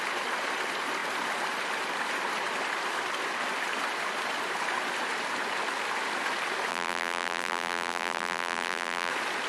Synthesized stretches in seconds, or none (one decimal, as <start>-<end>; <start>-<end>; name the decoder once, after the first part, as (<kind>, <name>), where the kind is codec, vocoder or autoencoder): 6.7-9.1 (vocoder, BigVGAN v2)